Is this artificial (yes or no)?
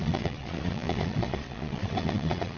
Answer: yes